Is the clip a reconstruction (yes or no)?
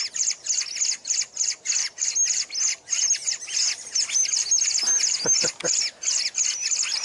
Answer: no